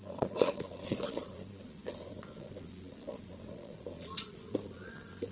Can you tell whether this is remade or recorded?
remade